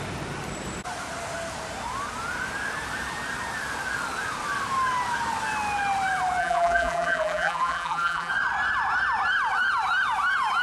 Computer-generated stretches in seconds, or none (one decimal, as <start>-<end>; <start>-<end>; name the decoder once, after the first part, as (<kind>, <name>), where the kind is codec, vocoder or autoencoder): 6.4-8.3 (vocoder, BigVGAN v2)